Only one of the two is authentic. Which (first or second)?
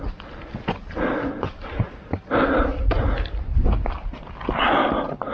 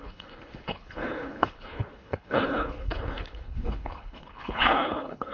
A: first